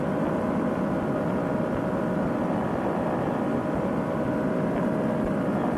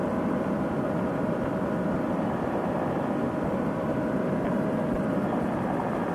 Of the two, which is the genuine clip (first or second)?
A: first